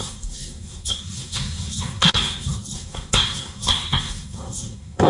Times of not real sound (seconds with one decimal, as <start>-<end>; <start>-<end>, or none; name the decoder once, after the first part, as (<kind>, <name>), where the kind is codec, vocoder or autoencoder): 0.0-5.1 (codec, SNAC)